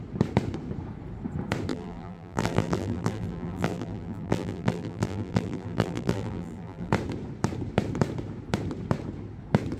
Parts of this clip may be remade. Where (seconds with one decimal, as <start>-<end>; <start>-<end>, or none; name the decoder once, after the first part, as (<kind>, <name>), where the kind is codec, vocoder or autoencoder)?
1.7-6.9 (vocoder, BigVGAN v2)